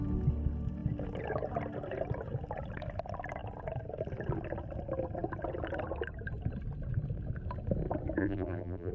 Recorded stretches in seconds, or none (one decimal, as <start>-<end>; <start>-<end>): 0.0-8.2